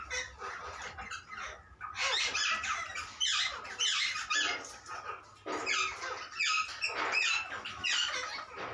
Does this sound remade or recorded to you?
recorded